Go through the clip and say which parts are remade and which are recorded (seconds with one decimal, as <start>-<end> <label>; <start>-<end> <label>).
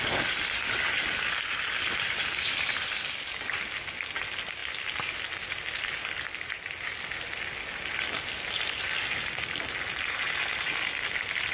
0.0-11.5 recorded